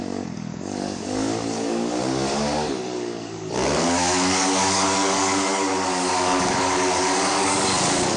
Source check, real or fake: fake